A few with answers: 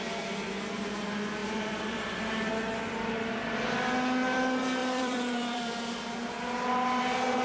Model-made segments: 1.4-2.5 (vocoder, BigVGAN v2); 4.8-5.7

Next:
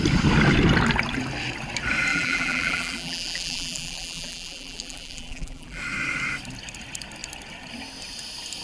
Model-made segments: 2.1-5.8 (vocoder, BigVGAN v2)